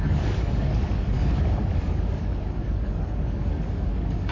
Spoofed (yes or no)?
yes